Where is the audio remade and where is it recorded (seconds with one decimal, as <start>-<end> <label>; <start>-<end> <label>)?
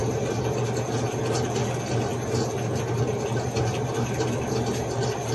0.0-5.3 recorded